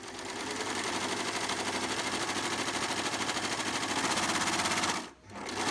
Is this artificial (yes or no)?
no